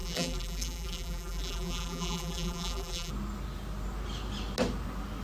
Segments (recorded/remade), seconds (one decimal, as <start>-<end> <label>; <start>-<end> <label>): 0.0-3.1 remade; 3.1-5.2 recorded